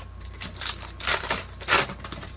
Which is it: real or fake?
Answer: real